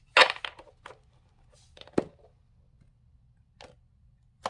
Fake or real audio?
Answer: real